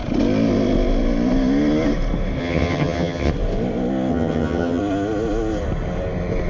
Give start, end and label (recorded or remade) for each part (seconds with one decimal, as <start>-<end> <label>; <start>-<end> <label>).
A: 0.0-2.4 recorded; 2.4-3.3 remade; 3.3-4.1 recorded; 4.1-4.8 remade; 4.8-6.5 recorded